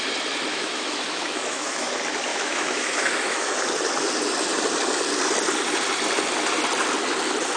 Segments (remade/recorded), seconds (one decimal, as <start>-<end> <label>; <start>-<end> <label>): 0.0-0.5 recorded; 0.5-1.9 remade; 1.9-2.3 recorded; 2.3-3.5 remade; 3.5-7.6 recorded